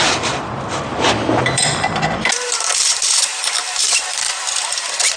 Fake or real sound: fake